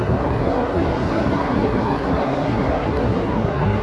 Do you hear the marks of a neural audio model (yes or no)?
yes